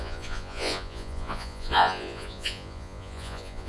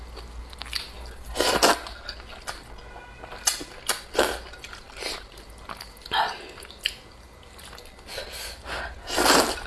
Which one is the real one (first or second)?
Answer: second